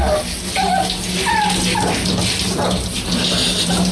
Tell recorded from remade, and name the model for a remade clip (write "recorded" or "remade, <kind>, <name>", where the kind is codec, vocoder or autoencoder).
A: recorded